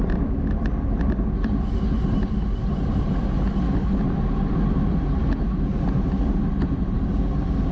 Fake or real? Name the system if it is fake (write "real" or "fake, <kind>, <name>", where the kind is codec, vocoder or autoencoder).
real